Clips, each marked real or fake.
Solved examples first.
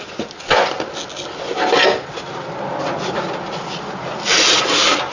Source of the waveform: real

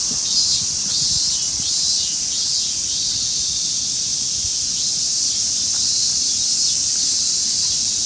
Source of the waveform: real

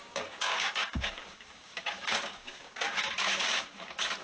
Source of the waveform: fake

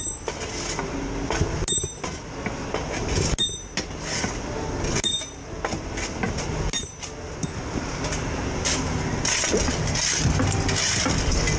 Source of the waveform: real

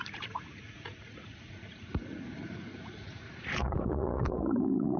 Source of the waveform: fake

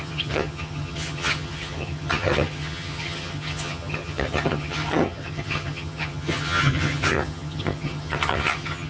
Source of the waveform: fake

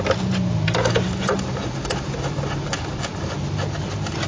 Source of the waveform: real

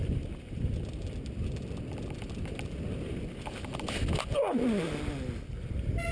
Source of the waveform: real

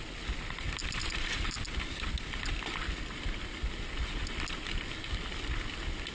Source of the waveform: real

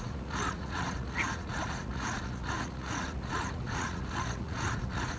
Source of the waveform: fake